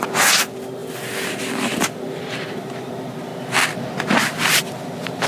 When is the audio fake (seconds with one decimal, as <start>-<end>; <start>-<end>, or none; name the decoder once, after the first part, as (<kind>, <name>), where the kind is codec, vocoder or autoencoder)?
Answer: none

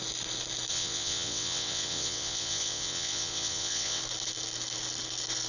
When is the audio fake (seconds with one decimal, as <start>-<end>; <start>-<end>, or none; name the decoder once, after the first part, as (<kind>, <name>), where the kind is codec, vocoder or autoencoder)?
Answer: 0.7-4.0 (vocoder, WaveNeXt)